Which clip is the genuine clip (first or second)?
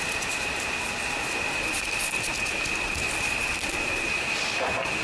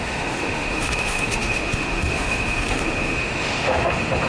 first